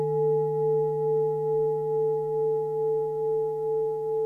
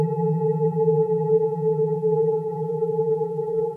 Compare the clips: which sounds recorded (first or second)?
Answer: first